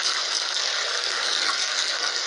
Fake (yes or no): yes